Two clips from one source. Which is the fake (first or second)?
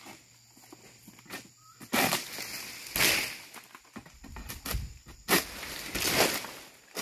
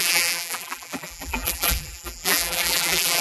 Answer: second